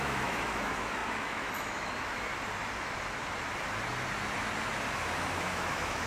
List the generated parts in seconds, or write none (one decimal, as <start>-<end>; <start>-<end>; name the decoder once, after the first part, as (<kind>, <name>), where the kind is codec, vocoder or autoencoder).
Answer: 0.0-2.3 (autoencoder, DAC-VAE); 5.3-6.1